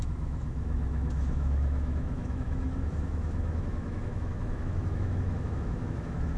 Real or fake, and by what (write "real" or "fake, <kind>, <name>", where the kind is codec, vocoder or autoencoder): fake, autoencoder, DAC-VAE